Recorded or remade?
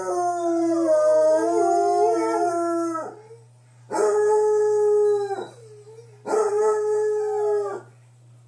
recorded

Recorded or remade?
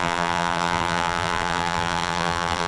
remade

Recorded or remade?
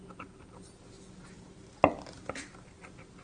recorded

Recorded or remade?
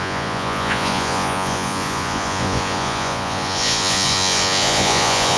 remade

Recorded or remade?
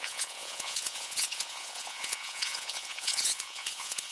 remade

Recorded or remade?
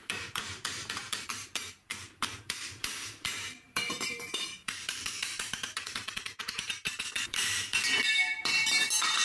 remade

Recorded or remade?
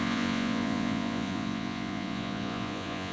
remade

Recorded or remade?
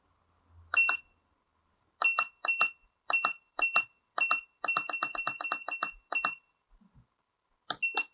recorded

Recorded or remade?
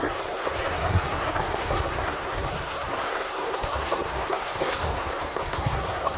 remade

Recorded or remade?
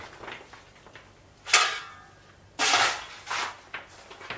recorded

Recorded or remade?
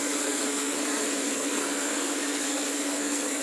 remade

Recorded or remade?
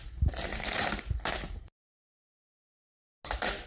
recorded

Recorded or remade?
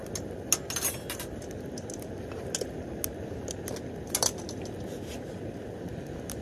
recorded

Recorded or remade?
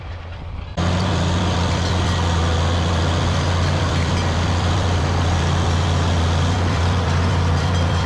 remade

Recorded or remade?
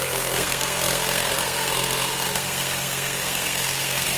remade